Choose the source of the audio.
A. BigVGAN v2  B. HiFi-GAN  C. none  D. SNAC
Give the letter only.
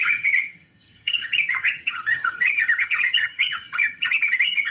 B